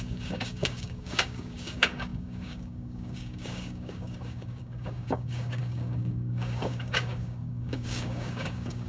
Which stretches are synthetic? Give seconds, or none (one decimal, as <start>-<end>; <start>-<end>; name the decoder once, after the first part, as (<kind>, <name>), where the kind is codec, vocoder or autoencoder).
0.0-8.9 (codec, DAC)